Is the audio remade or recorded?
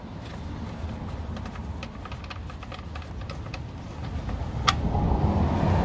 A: recorded